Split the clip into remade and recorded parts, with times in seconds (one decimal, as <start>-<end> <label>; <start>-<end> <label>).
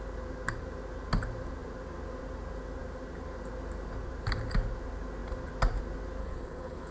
0.0-6.2 recorded; 6.2-6.9 remade